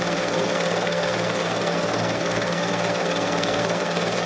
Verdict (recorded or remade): remade